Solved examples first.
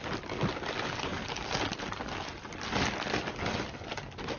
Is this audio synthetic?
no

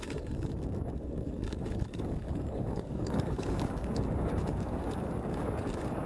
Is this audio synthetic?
yes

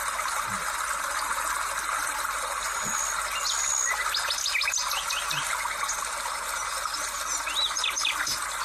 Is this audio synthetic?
no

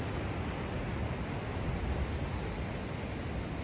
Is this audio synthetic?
no